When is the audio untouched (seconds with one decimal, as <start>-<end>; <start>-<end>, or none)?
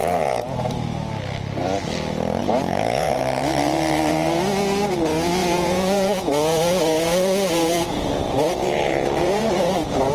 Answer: 0.7-2.4; 3.2-5.4